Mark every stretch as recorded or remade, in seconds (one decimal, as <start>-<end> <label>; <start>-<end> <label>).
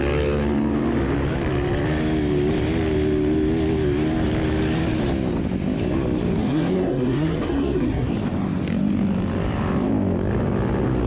0.0-6.4 recorded; 6.4-8.1 remade; 8.1-11.1 recorded